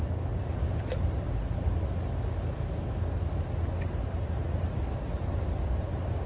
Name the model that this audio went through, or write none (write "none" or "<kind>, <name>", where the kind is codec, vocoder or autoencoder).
none